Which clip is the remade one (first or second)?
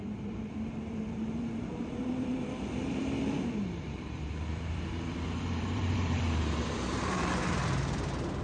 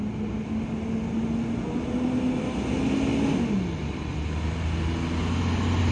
first